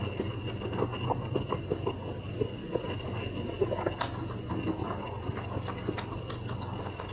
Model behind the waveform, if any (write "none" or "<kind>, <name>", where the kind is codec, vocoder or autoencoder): none